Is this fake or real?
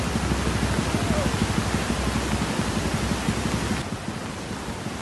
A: real